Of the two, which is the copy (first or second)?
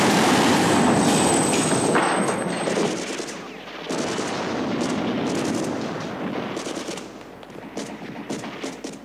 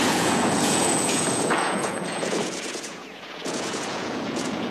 second